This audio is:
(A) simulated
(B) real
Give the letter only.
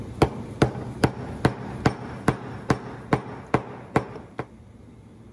B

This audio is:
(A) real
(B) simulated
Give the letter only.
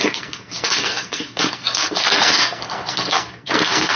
B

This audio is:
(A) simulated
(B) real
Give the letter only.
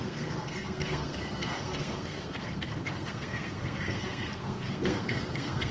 A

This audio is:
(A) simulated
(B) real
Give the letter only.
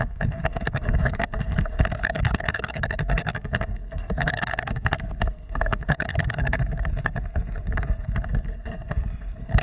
A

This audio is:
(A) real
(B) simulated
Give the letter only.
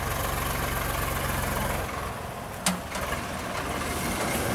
A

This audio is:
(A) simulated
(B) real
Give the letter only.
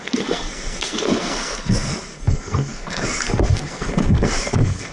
A